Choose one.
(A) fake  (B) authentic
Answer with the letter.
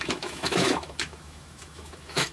A